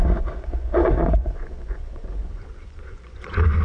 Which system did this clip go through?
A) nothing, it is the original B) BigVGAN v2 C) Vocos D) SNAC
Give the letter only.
C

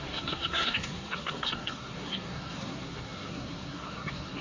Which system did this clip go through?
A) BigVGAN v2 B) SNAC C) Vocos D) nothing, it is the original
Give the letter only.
B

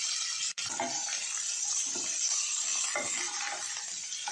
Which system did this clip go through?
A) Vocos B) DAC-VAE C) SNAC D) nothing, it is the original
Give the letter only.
D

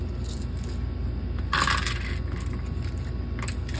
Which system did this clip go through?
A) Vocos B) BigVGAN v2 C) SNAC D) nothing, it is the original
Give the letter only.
D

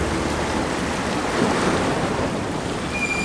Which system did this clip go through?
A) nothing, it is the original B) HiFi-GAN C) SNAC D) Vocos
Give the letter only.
A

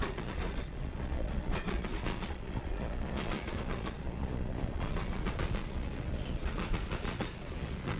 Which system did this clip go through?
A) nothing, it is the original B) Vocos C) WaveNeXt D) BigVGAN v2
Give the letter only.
B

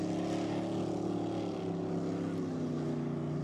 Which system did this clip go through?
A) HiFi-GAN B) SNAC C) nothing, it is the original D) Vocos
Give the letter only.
C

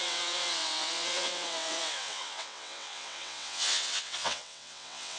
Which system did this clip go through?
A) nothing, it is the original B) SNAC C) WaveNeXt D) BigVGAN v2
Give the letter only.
C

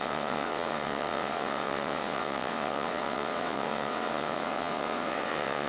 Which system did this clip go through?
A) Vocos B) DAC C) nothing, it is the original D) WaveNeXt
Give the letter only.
D